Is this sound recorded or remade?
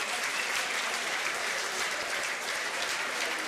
remade